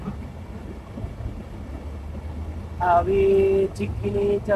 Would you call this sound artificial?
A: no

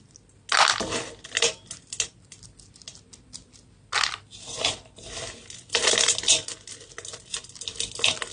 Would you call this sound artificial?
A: no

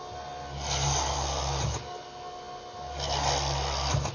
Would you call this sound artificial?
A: no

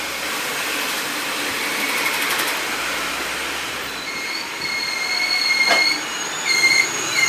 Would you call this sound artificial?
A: no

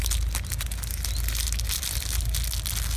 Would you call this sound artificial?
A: no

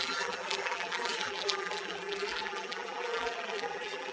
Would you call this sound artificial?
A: yes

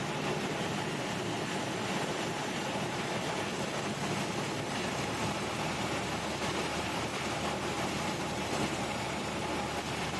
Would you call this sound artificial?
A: no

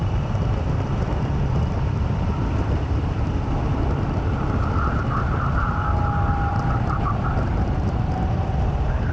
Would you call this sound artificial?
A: yes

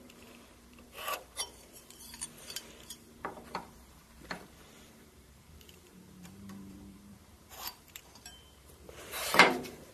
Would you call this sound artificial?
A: yes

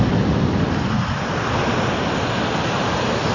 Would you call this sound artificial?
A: no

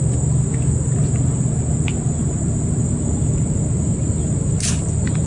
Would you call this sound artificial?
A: no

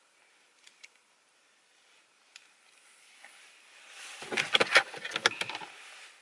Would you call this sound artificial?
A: yes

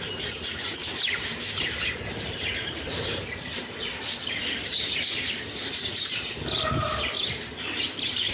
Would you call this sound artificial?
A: yes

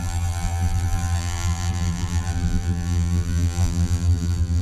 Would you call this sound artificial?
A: yes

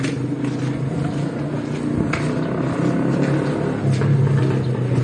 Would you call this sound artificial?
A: no